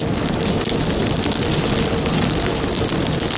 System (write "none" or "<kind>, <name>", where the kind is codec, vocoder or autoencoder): none